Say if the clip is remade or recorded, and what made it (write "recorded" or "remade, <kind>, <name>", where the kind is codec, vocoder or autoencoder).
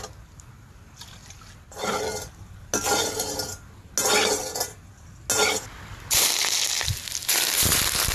recorded